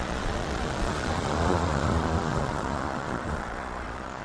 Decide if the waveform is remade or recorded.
remade